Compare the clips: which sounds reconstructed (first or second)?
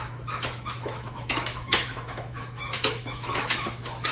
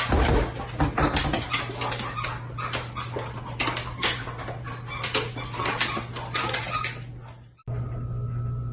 first